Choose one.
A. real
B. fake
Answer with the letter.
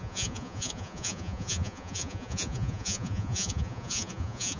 B